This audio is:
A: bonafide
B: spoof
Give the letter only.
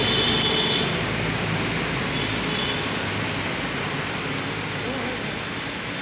A